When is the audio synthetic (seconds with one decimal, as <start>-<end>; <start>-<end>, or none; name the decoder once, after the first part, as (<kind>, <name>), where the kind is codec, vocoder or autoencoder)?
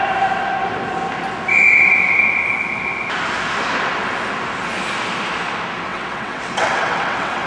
5.9-7.5 (vocoder, WaveNeXt)